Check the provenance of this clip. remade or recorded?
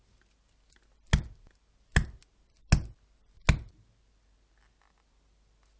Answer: recorded